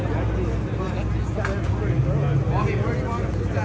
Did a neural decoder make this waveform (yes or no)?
no